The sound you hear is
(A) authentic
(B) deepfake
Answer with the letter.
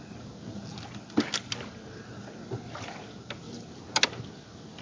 A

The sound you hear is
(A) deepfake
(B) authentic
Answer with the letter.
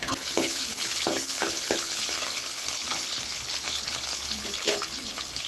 A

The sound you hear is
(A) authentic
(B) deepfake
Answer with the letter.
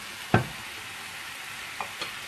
A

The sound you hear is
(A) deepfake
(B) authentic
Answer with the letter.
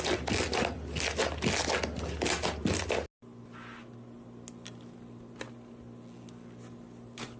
B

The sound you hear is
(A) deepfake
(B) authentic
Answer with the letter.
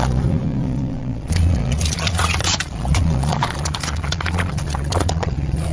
A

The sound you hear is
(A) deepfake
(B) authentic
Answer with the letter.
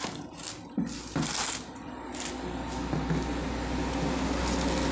B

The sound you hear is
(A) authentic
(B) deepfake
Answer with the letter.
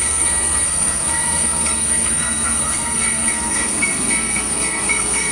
B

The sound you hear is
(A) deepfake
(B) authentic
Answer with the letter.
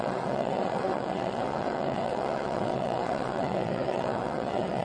A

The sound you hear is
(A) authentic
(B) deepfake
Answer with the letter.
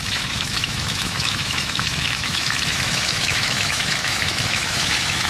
B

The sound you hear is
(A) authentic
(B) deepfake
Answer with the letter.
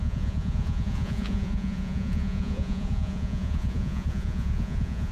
B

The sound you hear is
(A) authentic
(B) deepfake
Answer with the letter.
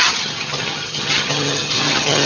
B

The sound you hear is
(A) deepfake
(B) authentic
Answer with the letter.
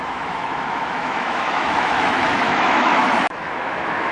A